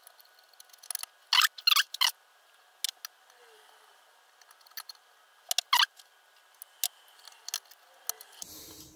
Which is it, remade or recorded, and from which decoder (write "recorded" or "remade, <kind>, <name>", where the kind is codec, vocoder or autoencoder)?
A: recorded